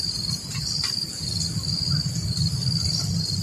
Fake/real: real